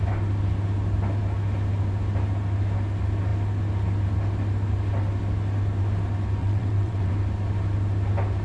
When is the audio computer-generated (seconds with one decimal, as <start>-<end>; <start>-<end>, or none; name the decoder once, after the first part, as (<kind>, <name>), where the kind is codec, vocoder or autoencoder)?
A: 6.4-7.1 (vocoder, WaveNeXt)